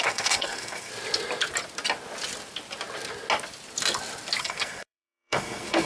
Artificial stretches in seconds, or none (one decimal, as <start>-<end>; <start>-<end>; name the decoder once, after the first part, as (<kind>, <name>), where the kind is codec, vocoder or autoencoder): 0.0-0.9 (codec, SNAC); 4.4-5.9